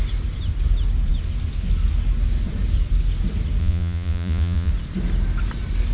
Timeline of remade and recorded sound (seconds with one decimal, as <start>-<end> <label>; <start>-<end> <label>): 0.0-3.6 recorded; 3.6-4.7 remade; 4.7-5.9 recorded